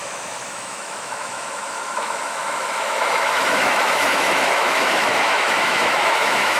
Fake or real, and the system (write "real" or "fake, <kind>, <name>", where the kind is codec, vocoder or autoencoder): fake, autoencoder, DAC-VAE